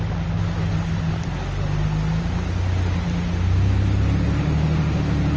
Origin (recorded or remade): recorded